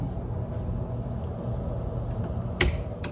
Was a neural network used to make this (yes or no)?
no